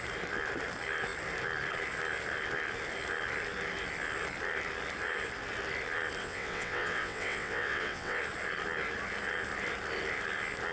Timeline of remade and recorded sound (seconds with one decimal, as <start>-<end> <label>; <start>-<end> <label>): 0.0-6.2 recorded; 6.2-8.2 remade; 8.2-10.7 recorded